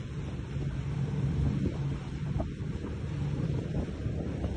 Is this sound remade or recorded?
remade